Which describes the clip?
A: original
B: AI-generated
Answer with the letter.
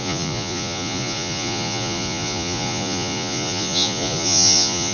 B